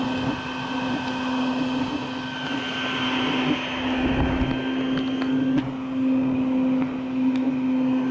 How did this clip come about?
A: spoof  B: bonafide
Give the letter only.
B